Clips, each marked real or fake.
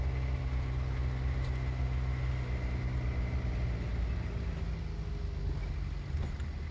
real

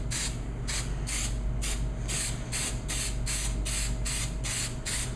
real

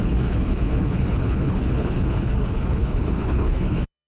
fake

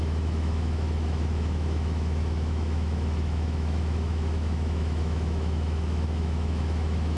fake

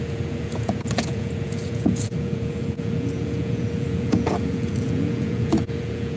fake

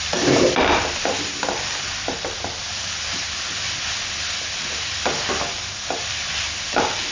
real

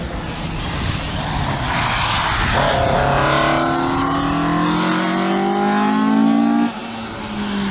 real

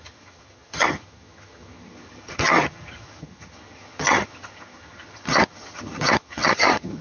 fake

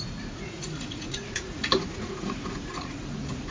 fake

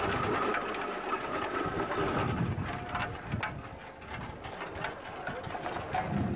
real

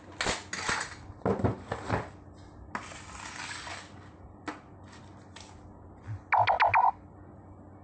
real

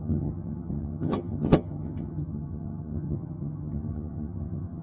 fake